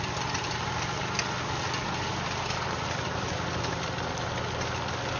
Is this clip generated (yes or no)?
no